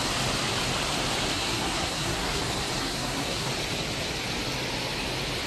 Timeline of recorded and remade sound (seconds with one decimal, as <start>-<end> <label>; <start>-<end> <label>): 0.0-1.3 recorded; 1.3-2.4 remade; 2.4-2.8 recorded; 2.8-3.5 remade; 3.5-5.5 recorded